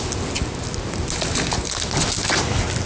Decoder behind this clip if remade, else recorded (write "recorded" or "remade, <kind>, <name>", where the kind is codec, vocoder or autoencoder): recorded